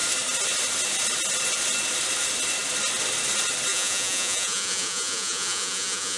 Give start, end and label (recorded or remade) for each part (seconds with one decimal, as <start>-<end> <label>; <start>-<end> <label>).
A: 0.0-3.7 recorded; 3.7-6.2 remade